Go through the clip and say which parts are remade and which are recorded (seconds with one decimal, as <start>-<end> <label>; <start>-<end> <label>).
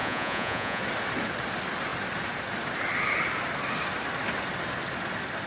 0.0-0.8 remade; 0.8-5.5 recorded